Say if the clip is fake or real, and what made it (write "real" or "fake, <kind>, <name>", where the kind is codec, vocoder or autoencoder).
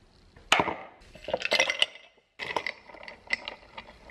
real